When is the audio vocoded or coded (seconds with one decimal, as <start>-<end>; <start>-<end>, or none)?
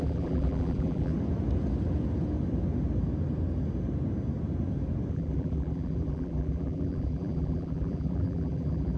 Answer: 0.0-1.1; 5.1-9.0